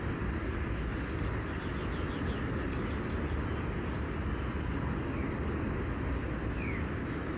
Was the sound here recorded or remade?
recorded